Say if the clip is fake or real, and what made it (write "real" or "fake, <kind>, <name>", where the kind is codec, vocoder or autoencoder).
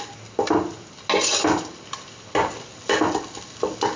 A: real